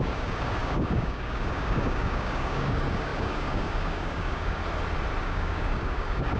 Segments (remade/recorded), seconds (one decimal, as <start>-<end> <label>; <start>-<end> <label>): 0.0-4.6 remade; 4.6-5.2 recorded; 5.2-6.4 remade